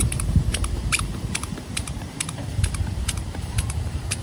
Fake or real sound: fake